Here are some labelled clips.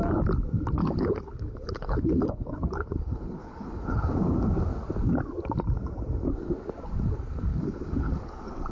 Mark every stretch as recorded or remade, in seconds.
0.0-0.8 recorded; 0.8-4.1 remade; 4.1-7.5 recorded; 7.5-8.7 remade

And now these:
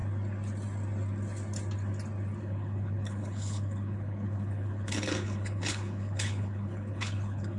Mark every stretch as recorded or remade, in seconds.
0.0-2.4 recorded; 2.4-7.6 remade

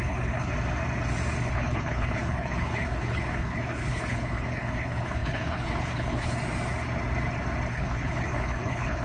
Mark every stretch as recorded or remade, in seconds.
0.0-0.5 remade; 0.5-1.4 recorded; 1.4-6.3 remade; 6.3-7.7 recorded; 7.7-9.0 remade

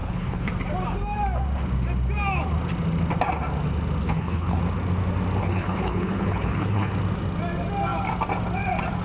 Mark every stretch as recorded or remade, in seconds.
0.0-0.5 remade; 0.5-4.0 recorded; 4.0-4.6 remade; 4.6-5.4 recorded; 5.4-6.9 remade; 6.9-9.0 recorded

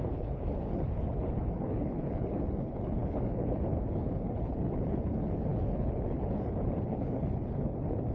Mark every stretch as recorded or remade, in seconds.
0.0-8.1 remade

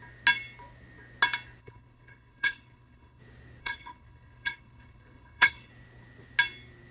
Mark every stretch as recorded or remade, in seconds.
0.0-1.6 recorded; 1.6-3.2 remade; 3.2-3.6 recorded; 3.6-5.7 remade; 5.7-6.9 recorded

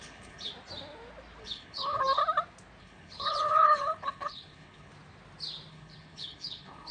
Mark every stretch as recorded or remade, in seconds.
0.0-0.5 remade; 0.5-1.4 recorded; 1.4-2.2 remade; 2.2-2.8 recorded; 2.8-4.9 remade; 4.9-5.7 recorded; 5.7-6.9 remade

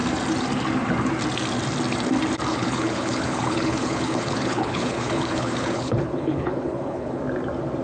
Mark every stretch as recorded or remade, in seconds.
0.0-2.5 recorded; 2.5-7.2 remade; 7.2-7.8 recorded